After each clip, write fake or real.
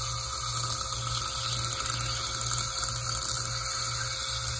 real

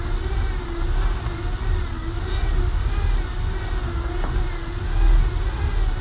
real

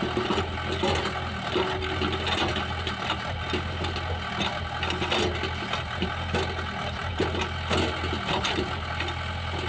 real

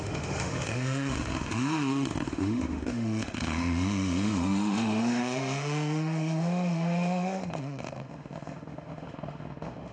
fake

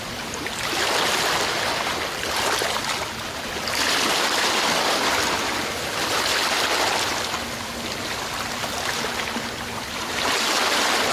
real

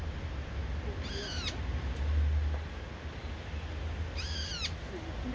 real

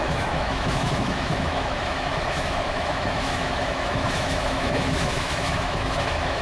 fake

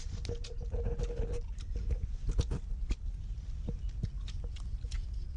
real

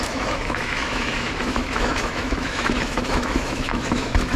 fake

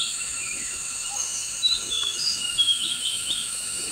fake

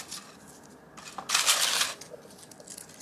real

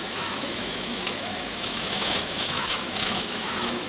fake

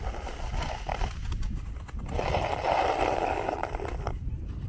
real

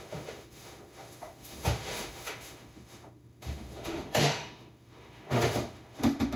fake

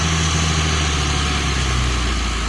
real